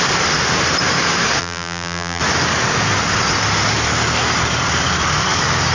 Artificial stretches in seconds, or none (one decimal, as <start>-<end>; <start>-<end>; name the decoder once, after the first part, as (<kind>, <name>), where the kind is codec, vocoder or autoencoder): 1.4-2.2 (vocoder, BigVGAN v2)